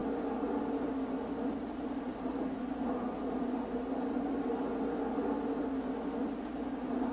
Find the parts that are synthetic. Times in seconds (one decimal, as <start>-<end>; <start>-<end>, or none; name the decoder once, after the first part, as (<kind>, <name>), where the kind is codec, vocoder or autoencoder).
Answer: none